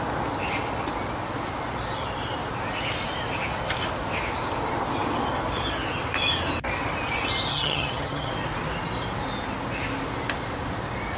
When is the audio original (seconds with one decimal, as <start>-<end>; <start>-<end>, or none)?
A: 0.0-7.5; 8.3-11.2